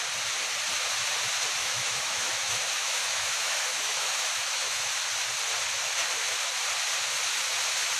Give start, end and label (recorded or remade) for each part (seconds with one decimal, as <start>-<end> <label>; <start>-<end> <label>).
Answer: 0.0-1.6 recorded; 1.6-4.9 remade; 4.9-8.0 recorded

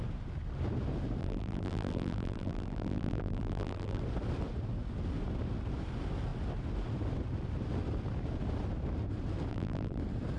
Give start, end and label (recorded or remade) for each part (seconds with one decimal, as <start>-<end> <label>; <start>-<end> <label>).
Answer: 0.0-1.2 recorded; 1.2-4.0 remade; 4.0-9.5 recorded; 9.5-10.0 remade; 10.0-10.4 recorded

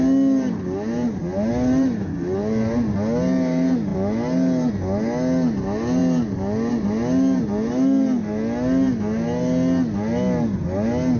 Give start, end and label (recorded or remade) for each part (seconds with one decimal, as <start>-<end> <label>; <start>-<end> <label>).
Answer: 0.0-11.2 recorded

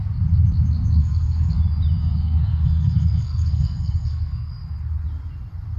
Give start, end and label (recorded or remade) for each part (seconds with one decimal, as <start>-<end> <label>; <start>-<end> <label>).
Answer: 0.0-1.0 recorded; 1.0-1.6 remade; 1.6-2.0 recorded; 2.0-4.5 remade; 4.5-5.8 recorded

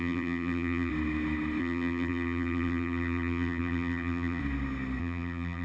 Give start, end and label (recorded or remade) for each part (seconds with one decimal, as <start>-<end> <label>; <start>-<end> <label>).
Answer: 0.0-0.9 remade; 0.9-1.6 recorded; 1.6-4.4 remade; 4.4-5.0 recorded; 5.0-5.6 remade

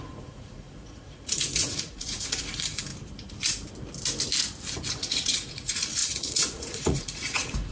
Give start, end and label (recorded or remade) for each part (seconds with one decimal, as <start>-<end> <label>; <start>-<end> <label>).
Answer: 0.0-2.9 remade; 2.9-4.9 recorded; 4.9-7.7 remade

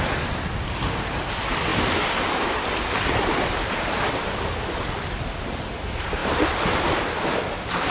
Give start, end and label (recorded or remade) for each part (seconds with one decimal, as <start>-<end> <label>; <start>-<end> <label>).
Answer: 0.0-7.9 recorded